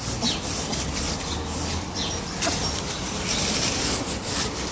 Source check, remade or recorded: recorded